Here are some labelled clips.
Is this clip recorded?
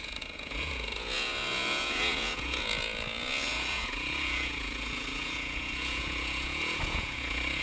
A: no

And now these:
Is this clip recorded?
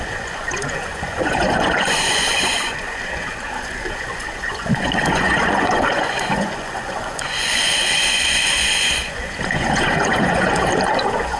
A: no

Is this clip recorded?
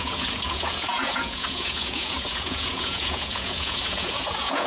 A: no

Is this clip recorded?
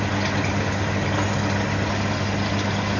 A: yes